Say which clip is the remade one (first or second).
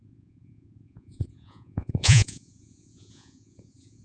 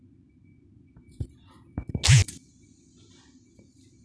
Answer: first